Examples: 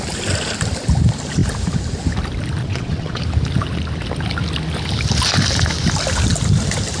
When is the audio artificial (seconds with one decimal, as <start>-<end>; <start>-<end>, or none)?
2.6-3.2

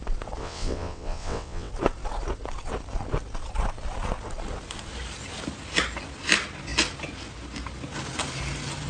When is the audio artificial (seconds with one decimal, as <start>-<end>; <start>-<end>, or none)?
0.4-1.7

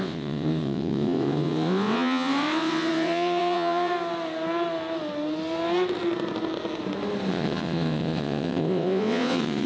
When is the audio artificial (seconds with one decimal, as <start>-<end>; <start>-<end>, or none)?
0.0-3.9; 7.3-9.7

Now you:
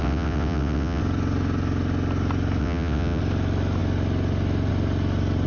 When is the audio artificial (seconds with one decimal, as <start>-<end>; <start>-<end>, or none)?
0.0-1.0; 2.6-3.2

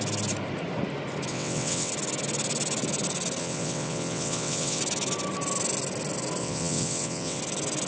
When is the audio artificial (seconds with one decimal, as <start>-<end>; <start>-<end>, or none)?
1.3-1.9; 3.4-4.8; 6.4-7.4

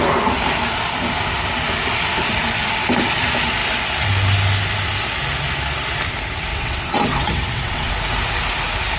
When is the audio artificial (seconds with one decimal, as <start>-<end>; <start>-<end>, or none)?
6.5-7.9

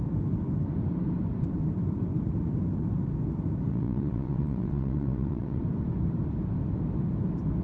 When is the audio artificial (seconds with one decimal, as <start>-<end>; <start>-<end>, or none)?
3.7-5.6

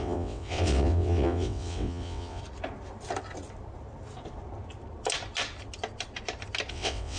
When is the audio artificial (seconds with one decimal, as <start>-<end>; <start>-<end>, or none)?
0.0-2.4; 6.7-7.2